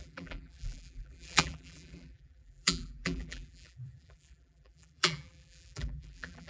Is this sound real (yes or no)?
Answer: no